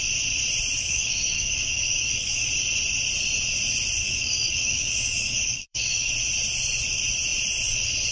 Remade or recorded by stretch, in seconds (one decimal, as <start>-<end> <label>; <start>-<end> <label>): 0.0-0.8 recorded; 0.8-2.5 remade; 2.5-4.0 recorded; 4.0-6.1 remade; 6.1-8.1 recorded